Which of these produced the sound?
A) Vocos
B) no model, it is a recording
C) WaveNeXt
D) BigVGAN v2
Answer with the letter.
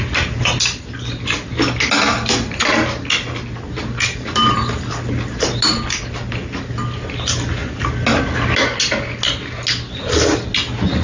B